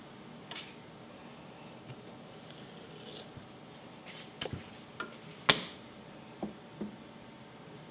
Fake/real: real